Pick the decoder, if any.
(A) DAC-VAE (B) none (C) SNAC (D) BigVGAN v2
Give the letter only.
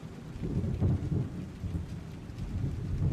B